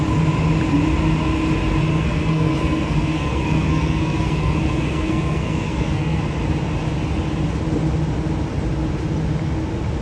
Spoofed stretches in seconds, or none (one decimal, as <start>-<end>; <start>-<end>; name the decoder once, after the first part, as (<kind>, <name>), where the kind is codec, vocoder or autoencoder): 1.9-6.2 (codec, SNAC)